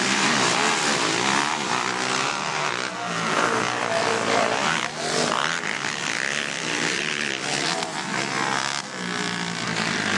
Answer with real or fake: real